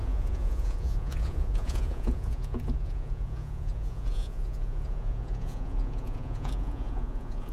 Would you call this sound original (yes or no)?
no